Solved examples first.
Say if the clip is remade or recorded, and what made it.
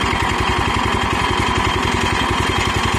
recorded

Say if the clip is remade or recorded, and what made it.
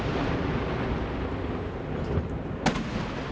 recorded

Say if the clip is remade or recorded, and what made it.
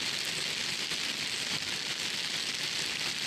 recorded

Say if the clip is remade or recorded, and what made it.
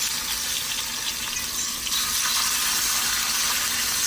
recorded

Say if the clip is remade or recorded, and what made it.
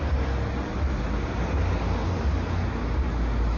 recorded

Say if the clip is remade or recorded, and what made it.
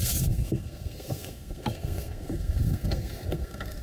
remade, codec, SNAC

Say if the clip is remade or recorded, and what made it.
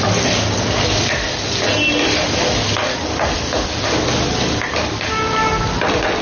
recorded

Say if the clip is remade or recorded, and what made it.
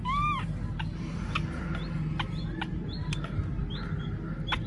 recorded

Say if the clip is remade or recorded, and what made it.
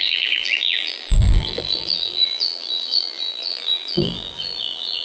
remade, vocoder, BigVGAN v2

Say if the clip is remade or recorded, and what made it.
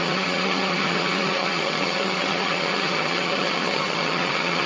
remade, vocoder, HiFi-GAN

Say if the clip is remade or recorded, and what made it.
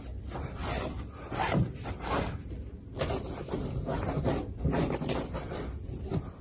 recorded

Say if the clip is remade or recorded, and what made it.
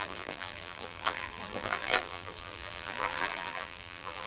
remade, vocoder, BigVGAN v2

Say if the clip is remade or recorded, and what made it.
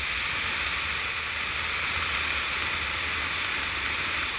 recorded